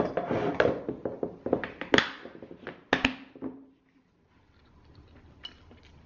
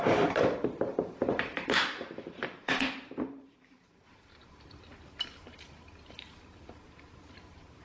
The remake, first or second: second